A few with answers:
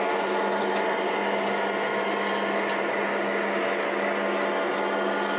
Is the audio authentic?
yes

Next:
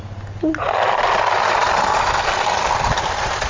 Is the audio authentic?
yes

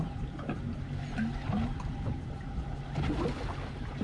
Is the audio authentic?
yes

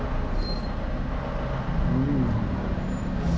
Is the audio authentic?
yes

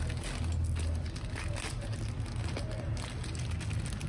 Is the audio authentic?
yes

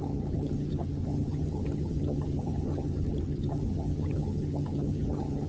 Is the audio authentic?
no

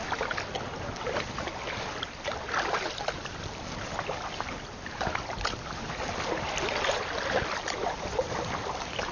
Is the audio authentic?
yes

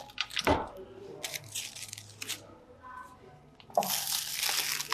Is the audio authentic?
yes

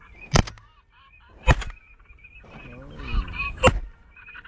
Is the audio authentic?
yes